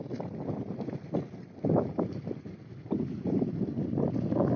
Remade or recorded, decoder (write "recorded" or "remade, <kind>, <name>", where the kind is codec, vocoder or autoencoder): recorded